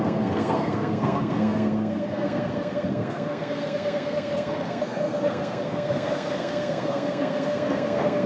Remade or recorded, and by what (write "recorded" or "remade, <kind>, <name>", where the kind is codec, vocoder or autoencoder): remade, codec, SNAC